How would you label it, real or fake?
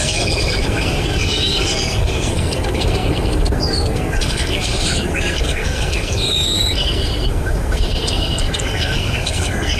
fake